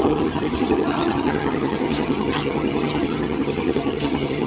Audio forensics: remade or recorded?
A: remade